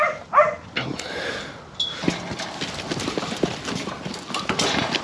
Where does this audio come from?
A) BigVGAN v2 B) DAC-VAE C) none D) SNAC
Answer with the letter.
C